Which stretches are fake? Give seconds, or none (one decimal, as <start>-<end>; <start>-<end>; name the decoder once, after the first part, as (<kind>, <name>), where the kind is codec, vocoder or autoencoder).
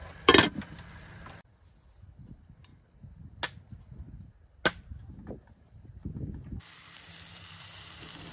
0.0-2.7 (vocoder, BigVGAN v2); 6.8-8.3